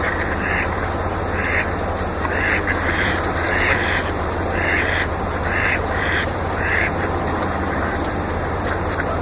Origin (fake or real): fake